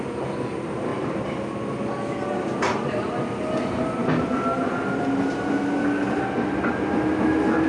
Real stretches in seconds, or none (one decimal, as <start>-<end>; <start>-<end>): 0.0-7.7